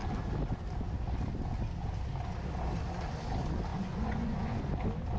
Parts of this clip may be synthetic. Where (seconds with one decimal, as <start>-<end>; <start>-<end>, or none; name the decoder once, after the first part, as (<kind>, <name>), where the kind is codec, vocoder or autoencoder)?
3.7-4.6 (vocoder, Vocos)